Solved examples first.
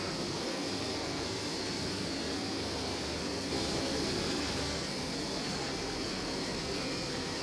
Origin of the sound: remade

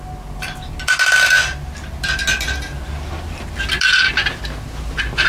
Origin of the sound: recorded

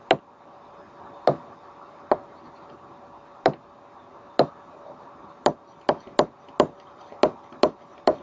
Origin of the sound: recorded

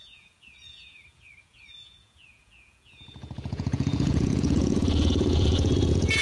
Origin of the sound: remade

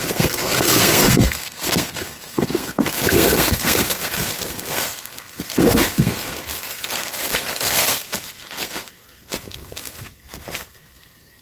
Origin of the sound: remade